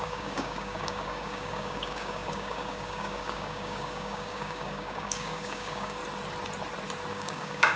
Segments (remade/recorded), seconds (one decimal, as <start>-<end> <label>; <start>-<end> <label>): 0.0-6.0 remade; 6.0-7.1 recorded; 7.1-7.8 remade